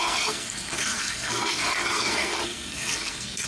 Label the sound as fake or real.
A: fake